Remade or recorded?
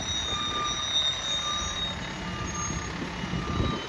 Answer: recorded